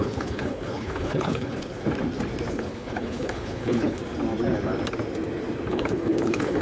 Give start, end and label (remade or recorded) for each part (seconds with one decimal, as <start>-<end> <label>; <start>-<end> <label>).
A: 0.0-1.7 remade; 1.7-2.5 recorded; 2.5-4.0 remade; 4.0-5.7 recorded; 5.7-6.6 remade